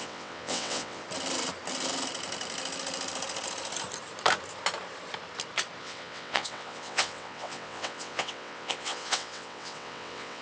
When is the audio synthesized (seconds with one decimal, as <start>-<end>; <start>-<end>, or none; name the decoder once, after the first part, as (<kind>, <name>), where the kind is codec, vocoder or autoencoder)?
0.0-1.0 (vocoder, WaveNeXt); 5.8-10.4